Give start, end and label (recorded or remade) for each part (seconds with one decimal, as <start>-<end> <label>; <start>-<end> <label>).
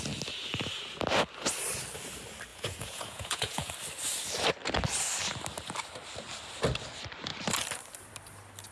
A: 0.0-2.5 recorded; 2.5-3.7 remade; 3.7-8.7 recorded